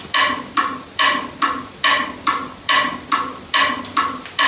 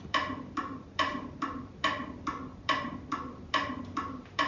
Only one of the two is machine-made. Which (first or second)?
second